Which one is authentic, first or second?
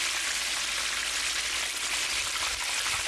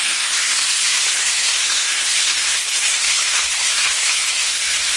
first